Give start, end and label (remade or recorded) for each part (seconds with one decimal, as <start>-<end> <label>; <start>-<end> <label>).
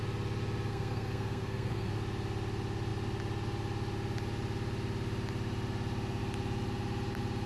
0.0-0.7 recorded; 0.7-1.9 remade; 1.9-7.5 recorded